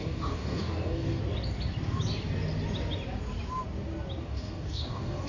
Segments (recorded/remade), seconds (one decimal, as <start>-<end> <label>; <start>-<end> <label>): 0.0-1.2 remade; 1.2-4.2 recorded; 4.2-5.3 remade